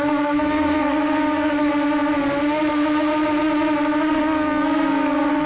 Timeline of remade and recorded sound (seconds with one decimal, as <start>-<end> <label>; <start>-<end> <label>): 0.0-1.7 remade; 1.7-2.7 recorded; 2.7-3.1 remade; 3.1-4.1 recorded; 4.1-5.5 remade